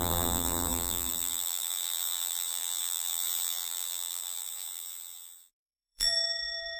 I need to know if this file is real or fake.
fake